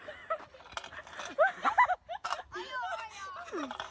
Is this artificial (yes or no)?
no